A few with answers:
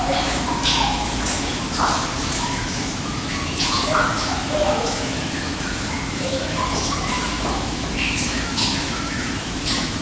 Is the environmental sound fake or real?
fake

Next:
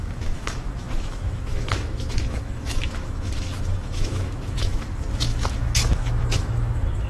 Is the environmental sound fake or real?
fake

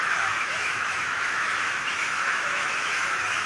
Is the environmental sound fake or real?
fake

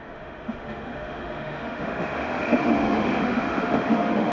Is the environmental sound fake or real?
fake